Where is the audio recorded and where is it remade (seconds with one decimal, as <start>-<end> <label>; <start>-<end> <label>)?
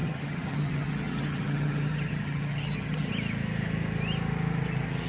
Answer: 0.0-3.1 remade; 3.1-5.1 recorded